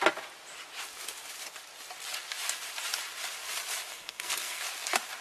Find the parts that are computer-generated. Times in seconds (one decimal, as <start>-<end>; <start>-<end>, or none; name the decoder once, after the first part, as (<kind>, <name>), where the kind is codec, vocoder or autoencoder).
3.9-4.6 (codec, SNAC)